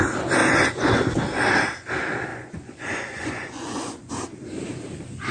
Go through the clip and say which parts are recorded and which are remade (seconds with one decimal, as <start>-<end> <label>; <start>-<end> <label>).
0.0-0.4 recorded; 0.4-0.9 remade; 0.9-2.3 recorded; 2.3-4.1 remade; 4.1-5.3 recorded